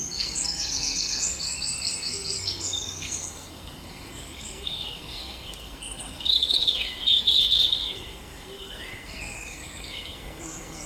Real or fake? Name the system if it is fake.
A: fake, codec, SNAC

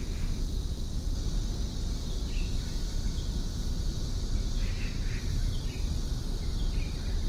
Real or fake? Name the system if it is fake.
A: fake, vocoder, BigVGAN v2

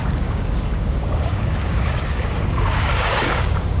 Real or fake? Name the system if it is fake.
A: fake, codec, DAC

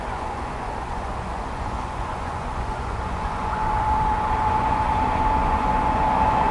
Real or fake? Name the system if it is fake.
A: fake, vocoder, Vocos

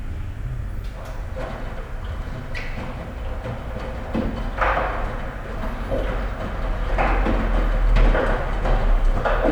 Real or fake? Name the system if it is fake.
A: real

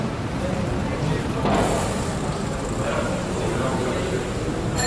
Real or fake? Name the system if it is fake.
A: fake, vocoder, BigVGAN v2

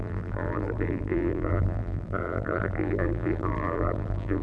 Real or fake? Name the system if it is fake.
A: fake, vocoder, BigVGAN v2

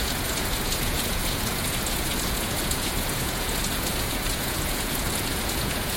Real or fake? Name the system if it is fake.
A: fake, vocoder, Vocos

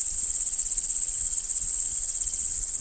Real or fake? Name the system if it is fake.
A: fake, vocoder, WaveNeXt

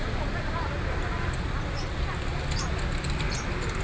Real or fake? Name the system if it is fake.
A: real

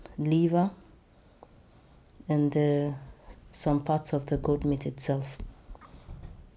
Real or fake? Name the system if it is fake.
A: real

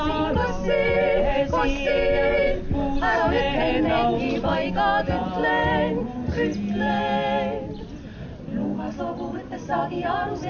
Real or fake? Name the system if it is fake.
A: real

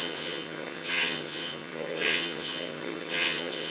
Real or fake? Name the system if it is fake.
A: fake, vocoder, HiFi-GAN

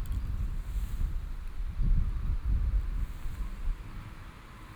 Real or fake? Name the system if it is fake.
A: real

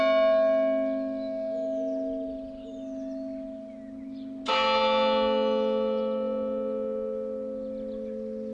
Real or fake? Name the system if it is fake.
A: real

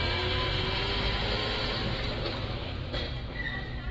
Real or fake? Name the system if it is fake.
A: real